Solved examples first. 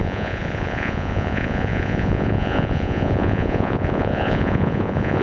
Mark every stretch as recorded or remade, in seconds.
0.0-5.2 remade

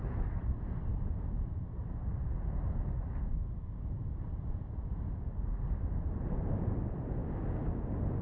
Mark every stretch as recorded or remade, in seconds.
0.0-8.2 recorded

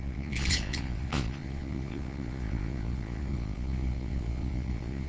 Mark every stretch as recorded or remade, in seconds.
0.0-5.1 remade

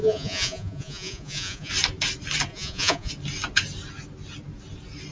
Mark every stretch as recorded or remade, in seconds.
0.0-1.7 remade; 1.7-2.5 recorded; 2.5-3.1 remade; 3.1-5.1 recorded

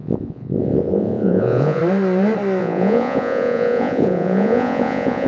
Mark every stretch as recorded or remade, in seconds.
0.0-1.8 remade; 1.8-2.6 recorded; 2.6-5.3 remade

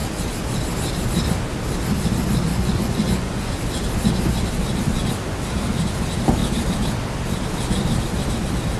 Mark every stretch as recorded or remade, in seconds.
0.0-2.5 recorded; 2.5-3.5 remade; 3.5-8.8 recorded

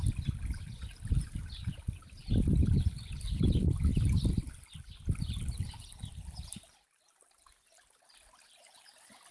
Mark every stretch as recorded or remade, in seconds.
0.0-9.3 recorded

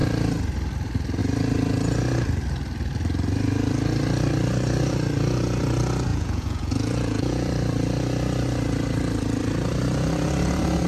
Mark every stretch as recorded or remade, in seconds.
0.0-6.1 recorded; 6.1-7.5 remade; 7.5-10.9 recorded